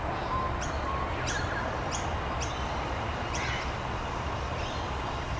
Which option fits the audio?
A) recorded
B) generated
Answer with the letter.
A